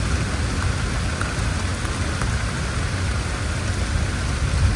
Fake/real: real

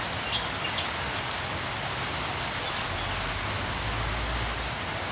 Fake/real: real